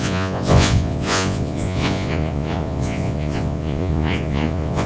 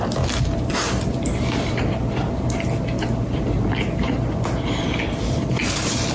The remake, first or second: first